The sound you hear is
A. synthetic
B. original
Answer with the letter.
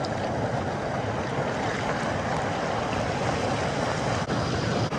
B